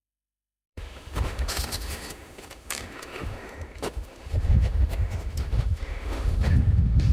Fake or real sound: fake